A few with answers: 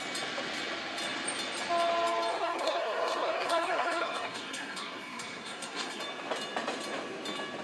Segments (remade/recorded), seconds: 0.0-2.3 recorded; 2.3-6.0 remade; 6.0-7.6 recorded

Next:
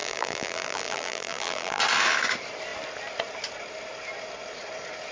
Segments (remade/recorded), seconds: 0.0-1.8 remade; 1.8-5.1 recorded

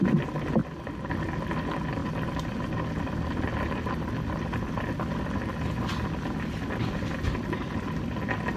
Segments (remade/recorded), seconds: 0.0-8.6 recorded

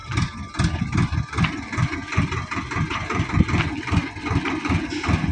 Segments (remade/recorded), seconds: 0.0-5.3 recorded

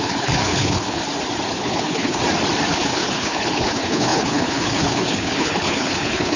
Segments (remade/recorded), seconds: 0.0-1.0 remade; 1.0-1.5 recorded; 1.5-2.2 remade; 2.2-2.7 recorded; 2.7-6.4 remade

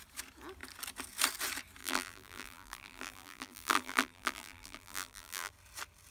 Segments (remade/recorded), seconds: 0.0-1.8 recorded; 1.8-5.5 remade; 5.5-6.1 recorded

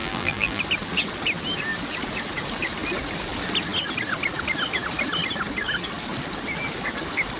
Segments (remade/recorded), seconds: 0.0-0.6 remade; 0.6-7.4 recorded

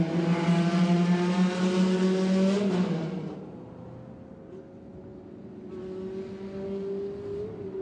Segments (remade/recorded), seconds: 0.0-7.8 recorded